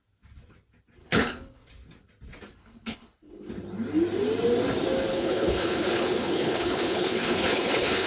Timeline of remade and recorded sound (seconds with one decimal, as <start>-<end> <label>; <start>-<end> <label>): 0.0-1.0 recorded; 1.0-1.7 remade; 1.7-2.6 recorded; 2.6-3.5 remade; 3.5-5.1 recorded; 5.1-8.1 remade